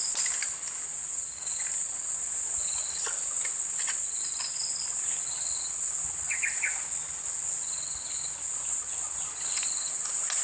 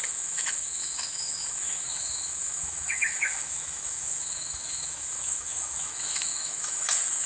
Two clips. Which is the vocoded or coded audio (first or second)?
second